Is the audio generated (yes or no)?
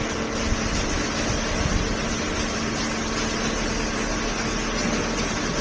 no